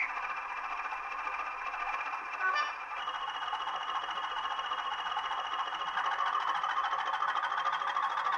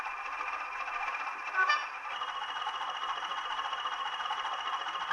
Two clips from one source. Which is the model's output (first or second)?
second